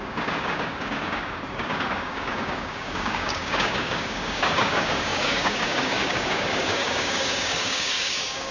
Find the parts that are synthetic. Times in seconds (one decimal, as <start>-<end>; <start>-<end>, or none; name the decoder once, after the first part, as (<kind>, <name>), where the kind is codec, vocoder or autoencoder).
0.0-8.5 (codec, DAC)